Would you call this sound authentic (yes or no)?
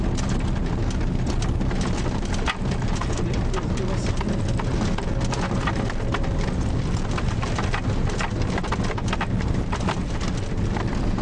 yes